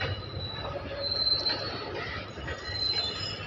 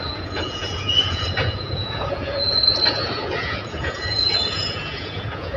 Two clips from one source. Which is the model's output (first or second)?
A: second